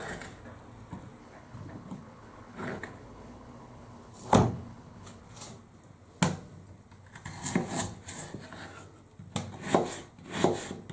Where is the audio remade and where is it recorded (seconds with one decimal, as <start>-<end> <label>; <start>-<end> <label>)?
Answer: 0.0-1.2 recorded; 1.2-5.2 remade; 5.2-10.9 recorded